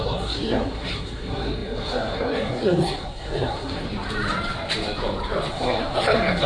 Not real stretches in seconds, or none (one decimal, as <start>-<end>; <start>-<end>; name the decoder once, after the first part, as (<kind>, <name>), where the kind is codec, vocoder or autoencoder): 0.0-3.9 (codec, SNAC); 5.5-6.5